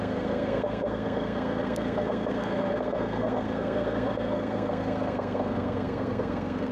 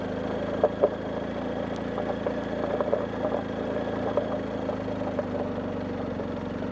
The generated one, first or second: first